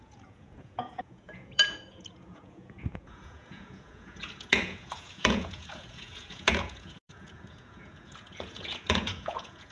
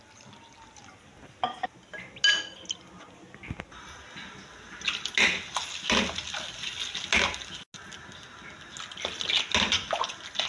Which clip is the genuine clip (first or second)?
second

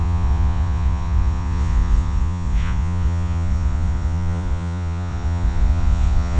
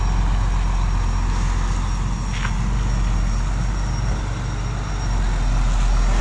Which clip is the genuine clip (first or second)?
second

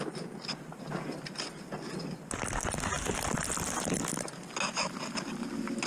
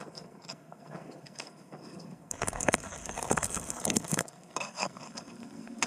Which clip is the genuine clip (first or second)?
first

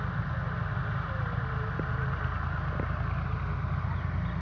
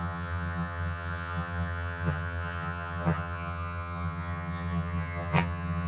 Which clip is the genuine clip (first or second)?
first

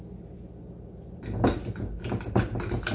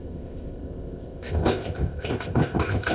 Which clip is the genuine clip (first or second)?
first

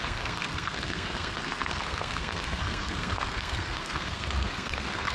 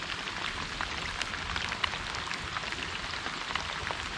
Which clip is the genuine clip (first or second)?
second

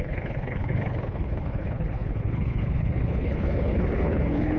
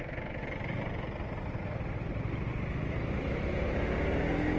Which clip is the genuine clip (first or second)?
second